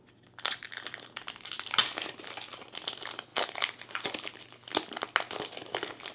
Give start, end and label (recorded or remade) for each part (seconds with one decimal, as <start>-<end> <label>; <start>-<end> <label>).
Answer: 0.0-6.1 recorded